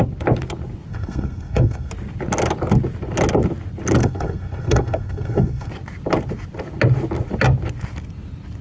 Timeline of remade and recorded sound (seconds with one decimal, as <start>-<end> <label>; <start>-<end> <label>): 0.0-0.9 recorded; 0.9-1.9 remade; 1.9-4.0 recorded; 4.0-5.7 remade; 5.7-8.6 recorded